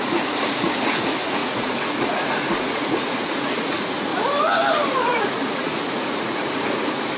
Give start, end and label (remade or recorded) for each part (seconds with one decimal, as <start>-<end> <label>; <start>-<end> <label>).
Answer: 0.0-4.1 remade; 4.1-4.9 recorded; 4.9-7.2 remade